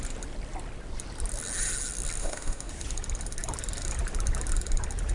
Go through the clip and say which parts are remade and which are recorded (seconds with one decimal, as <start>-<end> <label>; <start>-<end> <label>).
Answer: 0.0-2.2 recorded; 2.2-2.7 remade; 2.7-5.1 recorded